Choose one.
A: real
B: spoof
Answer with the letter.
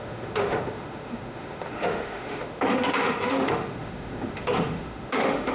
B